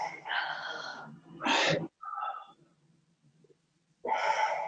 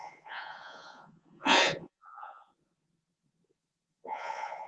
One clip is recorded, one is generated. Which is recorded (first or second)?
first